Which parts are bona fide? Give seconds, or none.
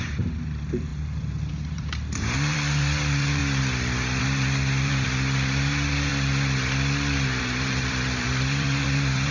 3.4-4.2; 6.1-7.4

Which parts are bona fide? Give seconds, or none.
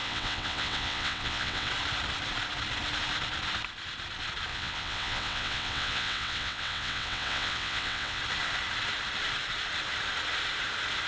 1.7-4.5; 8.2-11.1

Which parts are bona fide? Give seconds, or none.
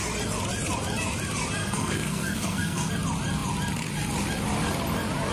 0.0-1.6; 2.9-5.3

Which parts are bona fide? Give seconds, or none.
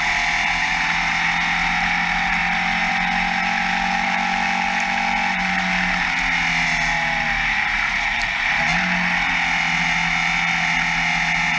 0.0-11.6